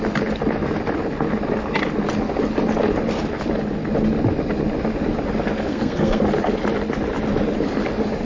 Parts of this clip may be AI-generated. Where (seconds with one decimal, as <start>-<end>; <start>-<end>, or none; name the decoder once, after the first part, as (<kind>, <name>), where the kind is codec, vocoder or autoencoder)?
5.7-6.2 (codec, SNAC)